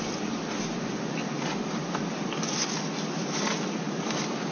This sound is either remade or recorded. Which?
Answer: recorded